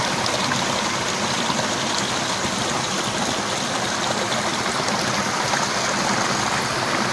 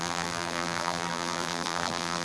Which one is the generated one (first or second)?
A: second